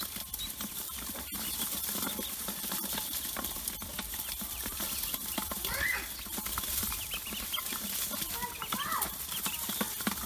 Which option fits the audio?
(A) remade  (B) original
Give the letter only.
B